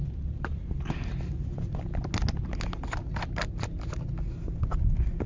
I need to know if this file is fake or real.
real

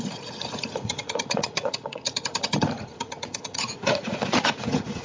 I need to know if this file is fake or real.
fake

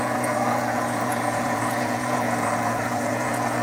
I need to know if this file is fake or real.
fake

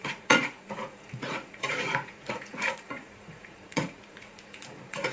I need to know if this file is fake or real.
fake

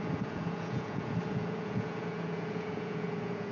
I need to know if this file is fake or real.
fake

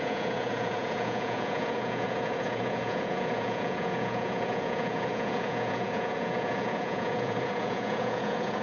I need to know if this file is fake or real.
fake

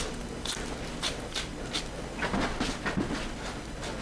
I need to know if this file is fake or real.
real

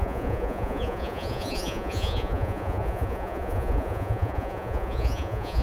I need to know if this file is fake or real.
fake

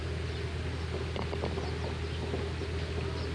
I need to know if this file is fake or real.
real